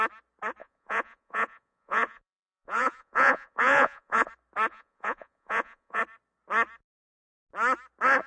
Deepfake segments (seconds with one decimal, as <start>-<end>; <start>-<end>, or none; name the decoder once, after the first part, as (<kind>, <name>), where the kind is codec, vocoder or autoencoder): 0.6-4.3 (vocoder, Vocos); 4.7-6.0